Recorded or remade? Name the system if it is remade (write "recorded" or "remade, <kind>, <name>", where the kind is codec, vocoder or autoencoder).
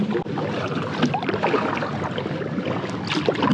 recorded